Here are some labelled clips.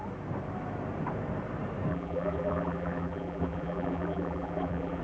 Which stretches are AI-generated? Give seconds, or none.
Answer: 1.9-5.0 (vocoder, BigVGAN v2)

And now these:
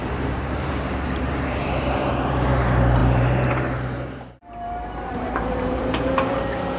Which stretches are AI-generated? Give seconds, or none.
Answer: 0.0-6.8 (vocoder, BigVGAN v2)

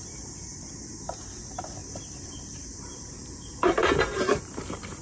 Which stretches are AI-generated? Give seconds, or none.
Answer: 0.0-1.3 (vocoder, BigVGAN v2); 1.8-5.0

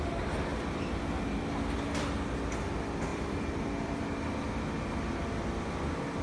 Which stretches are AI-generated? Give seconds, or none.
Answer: 3.1-4.2 (vocoder, BigVGAN v2)

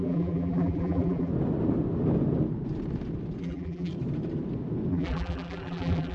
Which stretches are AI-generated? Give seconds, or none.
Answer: 0.0-1.3 (vocoder, BigVGAN v2); 3.4-3.9; 4.9-6.1